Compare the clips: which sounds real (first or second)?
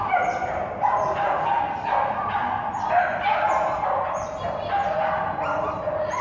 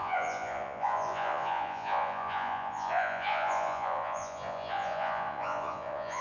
first